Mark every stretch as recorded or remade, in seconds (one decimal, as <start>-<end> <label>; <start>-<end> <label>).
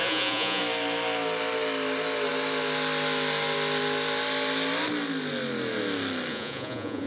0.0-0.6 remade; 0.6-6.3 recorded; 6.3-7.1 remade